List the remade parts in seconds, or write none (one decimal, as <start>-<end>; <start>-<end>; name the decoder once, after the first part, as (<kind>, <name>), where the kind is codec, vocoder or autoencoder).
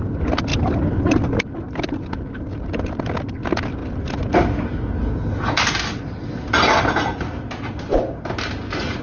none